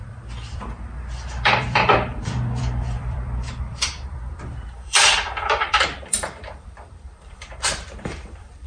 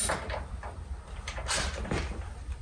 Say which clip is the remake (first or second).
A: first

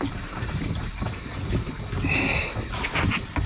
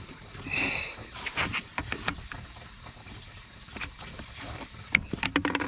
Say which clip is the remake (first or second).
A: second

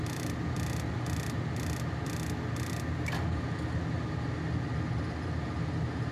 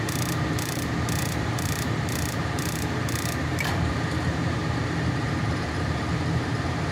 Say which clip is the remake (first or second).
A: second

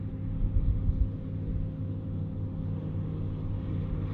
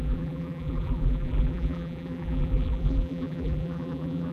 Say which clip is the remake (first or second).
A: second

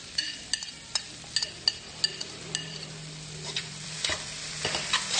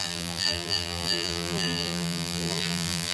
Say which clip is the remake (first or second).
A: second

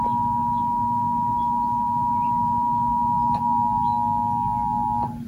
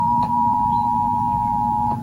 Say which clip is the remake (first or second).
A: second